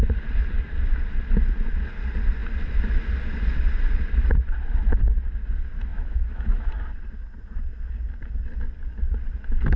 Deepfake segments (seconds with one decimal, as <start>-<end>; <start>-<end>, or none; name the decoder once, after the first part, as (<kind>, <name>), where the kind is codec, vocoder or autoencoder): 5.9-6.7 (autoencoder, DAC-VAE)